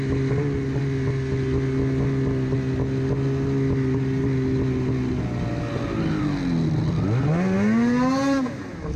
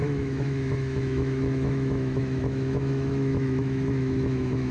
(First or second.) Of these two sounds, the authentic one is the first